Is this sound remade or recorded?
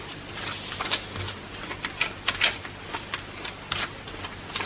recorded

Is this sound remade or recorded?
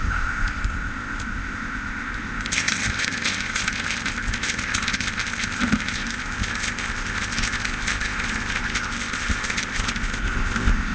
remade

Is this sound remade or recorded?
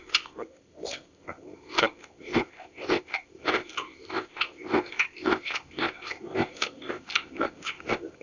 remade